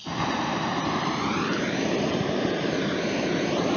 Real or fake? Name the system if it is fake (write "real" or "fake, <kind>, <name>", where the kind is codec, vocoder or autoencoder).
fake, vocoder, BigVGAN v2